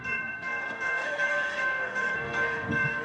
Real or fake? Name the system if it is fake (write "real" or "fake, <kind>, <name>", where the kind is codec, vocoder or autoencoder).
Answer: fake, codec, SNAC